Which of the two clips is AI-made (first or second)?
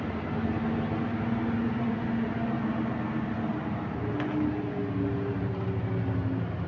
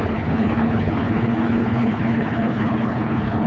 second